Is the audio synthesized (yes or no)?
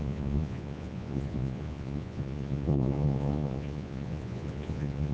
yes